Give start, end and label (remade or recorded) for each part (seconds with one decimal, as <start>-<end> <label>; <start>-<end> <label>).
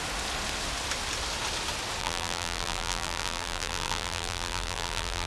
0.0-2.0 recorded; 2.0-5.3 remade